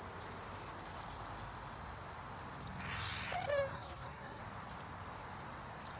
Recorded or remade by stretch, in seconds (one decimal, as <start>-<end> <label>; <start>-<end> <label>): 0.0-3.7 recorded; 3.7-4.4 remade; 4.4-6.0 recorded